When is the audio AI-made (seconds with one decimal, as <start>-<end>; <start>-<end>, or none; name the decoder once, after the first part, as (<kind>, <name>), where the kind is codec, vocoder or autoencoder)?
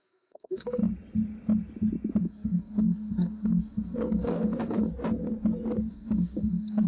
0.0-0.8 (codec, SNAC); 2.2-4.9; 5.9-6.9